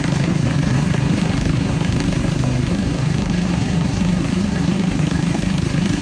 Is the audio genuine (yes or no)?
no